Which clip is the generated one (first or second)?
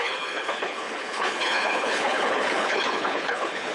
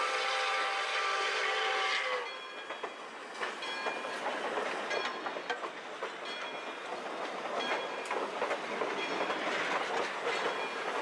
first